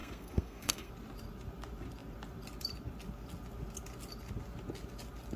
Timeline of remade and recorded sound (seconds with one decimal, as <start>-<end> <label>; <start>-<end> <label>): 0.0-0.9 remade; 0.9-5.4 recorded